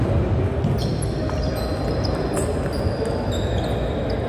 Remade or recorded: recorded